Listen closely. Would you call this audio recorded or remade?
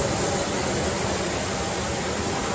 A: recorded